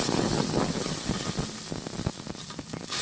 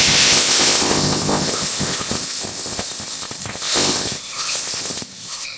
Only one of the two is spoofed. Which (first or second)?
second